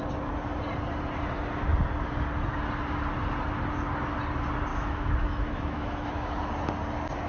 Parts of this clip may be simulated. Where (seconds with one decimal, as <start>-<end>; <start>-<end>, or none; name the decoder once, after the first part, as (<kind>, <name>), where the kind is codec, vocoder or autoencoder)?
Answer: 4.7-6.5 (autoencoder, DAC-VAE)